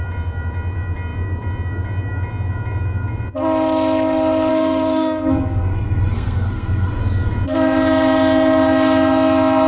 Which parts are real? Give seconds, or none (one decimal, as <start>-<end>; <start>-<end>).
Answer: 0.0-4.5; 7.0-9.7